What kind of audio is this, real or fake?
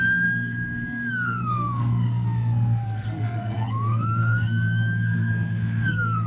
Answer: fake